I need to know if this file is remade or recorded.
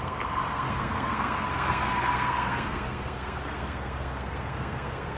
remade